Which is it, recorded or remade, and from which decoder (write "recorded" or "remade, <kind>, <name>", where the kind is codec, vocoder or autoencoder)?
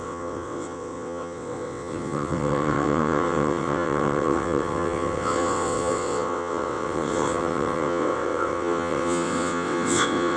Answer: remade, vocoder, WaveNeXt